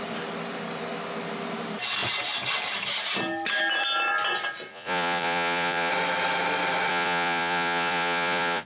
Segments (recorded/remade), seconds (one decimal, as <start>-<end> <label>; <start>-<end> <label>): 0.0-4.7 recorded; 4.7-5.9 remade; 5.9-6.9 recorded; 6.9-8.7 remade